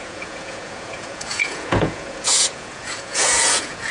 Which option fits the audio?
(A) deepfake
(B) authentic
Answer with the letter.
A